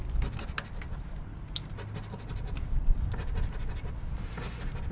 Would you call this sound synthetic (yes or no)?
no